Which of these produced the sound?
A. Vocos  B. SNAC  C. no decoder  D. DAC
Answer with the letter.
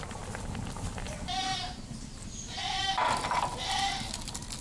C